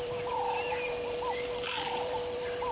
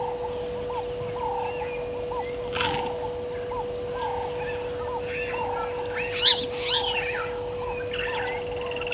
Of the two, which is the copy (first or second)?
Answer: first